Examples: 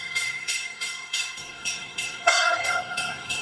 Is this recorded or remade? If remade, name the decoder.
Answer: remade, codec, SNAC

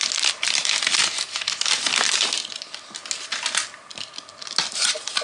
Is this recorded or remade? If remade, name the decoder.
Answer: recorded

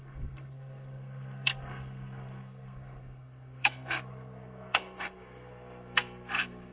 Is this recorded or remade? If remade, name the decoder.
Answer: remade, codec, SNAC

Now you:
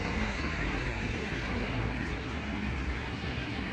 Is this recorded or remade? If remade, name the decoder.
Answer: remade, codec, SNAC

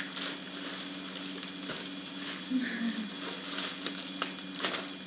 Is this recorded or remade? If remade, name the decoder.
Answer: recorded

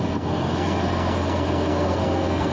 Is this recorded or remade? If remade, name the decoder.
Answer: remade, codec, SNAC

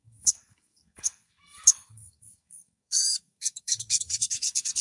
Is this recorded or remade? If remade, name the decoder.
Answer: remade, codec, SNAC